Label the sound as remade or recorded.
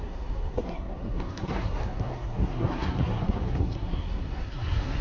remade